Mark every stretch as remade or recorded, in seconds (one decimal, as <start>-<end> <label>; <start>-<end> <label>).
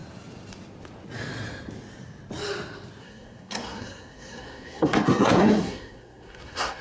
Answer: 0.0-3.0 recorded; 3.0-6.8 remade